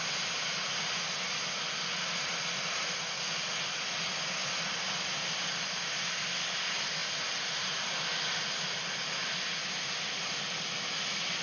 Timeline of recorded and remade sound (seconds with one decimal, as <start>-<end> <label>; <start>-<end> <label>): 0.0-11.4 recorded